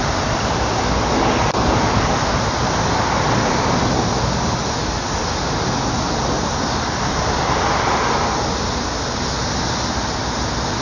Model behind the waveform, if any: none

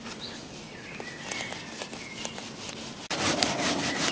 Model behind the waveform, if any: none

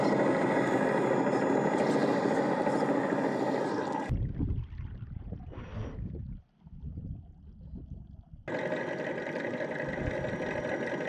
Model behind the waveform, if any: none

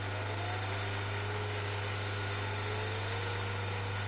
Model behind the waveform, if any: none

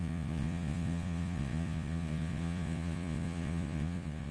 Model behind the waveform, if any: vocoder, Vocos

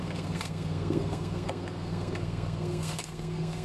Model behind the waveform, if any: codec, SNAC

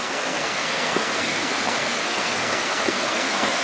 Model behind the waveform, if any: codec, SNAC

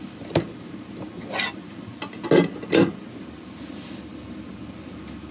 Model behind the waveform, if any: none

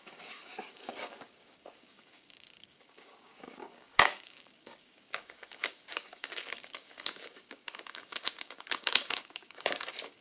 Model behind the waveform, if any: codec, DAC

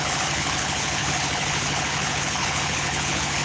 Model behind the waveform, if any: codec, HILCodec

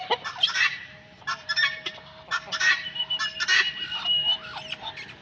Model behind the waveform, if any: none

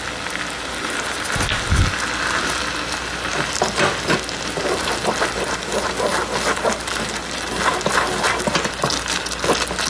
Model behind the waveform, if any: none